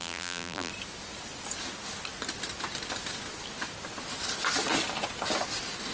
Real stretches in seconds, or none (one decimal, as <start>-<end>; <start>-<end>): 0.7-5.9